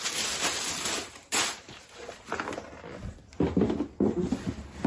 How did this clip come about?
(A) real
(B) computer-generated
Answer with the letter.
A